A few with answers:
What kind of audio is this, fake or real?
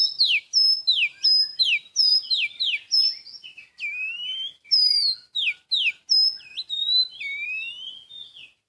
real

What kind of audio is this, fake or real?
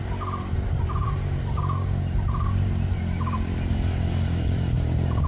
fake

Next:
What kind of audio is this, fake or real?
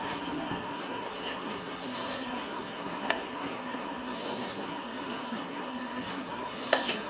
fake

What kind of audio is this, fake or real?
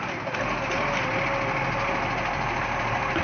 real